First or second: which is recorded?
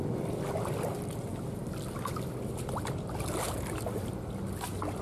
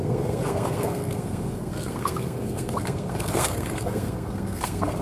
first